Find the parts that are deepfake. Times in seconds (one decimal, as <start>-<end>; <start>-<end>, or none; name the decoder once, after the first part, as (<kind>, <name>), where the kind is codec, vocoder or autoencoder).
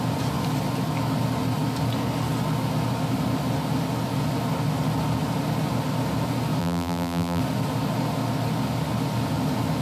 6.6-7.4 (vocoder, BigVGAN v2)